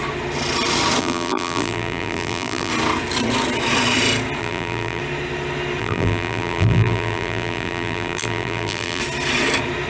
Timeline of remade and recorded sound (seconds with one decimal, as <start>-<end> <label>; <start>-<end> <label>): 0.0-1.0 recorded; 1.0-2.7 remade; 2.7-4.4 recorded; 4.4-5.0 remade; 5.0-5.8 recorded; 5.8-9.0 remade; 9.0-9.9 recorded